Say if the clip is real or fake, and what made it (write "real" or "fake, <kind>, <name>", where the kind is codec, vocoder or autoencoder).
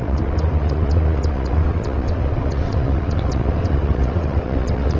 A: fake, vocoder, WaveNeXt